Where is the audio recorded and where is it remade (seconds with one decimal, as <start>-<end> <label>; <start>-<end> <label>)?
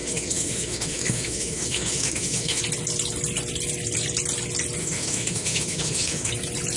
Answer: 0.0-2.6 remade; 2.6-4.8 recorded; 4.8-6.3 remade; 6.3-6.8 recorded